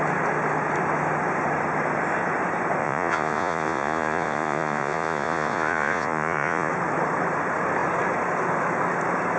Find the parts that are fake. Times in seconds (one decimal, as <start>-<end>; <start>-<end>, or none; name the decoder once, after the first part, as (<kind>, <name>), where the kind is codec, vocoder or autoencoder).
2.8-6.7 (vocoder, Vocos)